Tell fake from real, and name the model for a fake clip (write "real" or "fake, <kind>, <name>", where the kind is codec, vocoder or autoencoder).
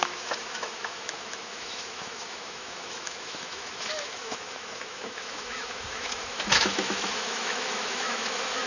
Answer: fake, autoencoder, DAC-VAE